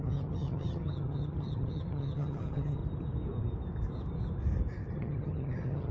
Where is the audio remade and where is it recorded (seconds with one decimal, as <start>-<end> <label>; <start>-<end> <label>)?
0.0-2.8 remade; 2.8-4.9 recorded; 4.9-5.9 remade